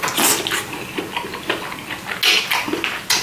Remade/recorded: recorded